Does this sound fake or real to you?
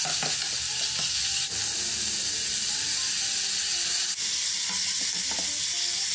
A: real